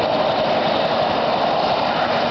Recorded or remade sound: recorded